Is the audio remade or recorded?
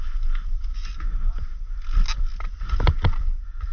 recorded